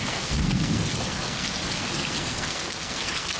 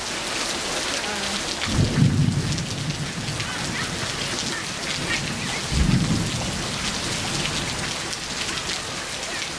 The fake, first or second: first